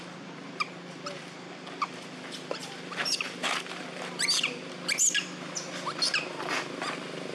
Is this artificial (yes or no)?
no